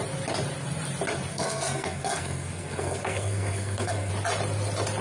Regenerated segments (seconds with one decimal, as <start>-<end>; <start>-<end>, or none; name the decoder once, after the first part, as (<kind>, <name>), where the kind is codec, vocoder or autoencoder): 1.3-4.1 (codec, SNAC)